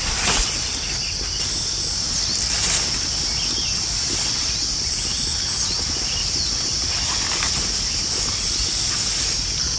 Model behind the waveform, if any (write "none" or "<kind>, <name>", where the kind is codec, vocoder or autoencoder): none